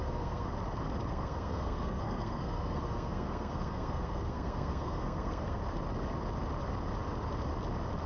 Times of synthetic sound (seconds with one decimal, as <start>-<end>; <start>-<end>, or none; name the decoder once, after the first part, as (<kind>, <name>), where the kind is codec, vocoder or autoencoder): 0.0-0.5 (codec, SNAC); 1.1-5.6